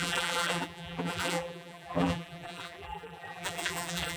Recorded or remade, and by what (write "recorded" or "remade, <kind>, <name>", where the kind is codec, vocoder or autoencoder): remade, vocoder, BigVGAN v2